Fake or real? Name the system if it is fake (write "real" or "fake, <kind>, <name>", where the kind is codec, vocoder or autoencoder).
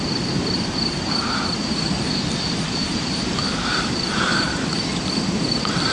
fake, vocoder, BigVGAN v2